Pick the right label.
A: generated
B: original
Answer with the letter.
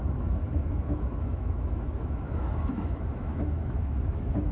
A